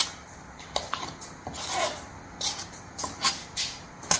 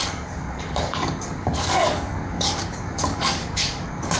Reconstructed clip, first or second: second